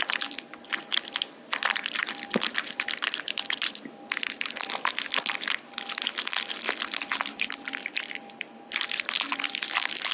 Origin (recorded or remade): remade